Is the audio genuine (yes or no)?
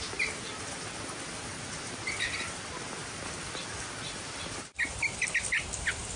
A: yes